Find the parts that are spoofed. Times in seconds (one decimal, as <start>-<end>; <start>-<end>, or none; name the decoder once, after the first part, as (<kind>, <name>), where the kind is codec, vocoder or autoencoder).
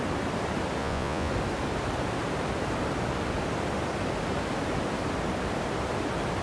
0.8-1.3 (vocoder, Vocos)